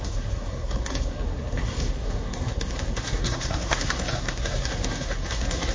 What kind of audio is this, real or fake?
fake